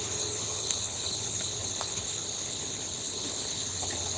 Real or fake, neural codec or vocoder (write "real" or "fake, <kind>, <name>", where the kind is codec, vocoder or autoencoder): fake, codec, HILCodec